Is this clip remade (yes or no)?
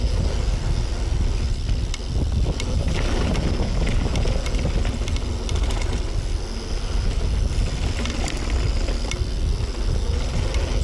no